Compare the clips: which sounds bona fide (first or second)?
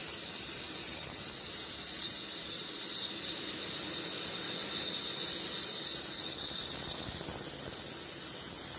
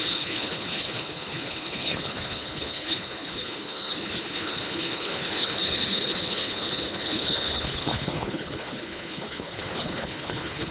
first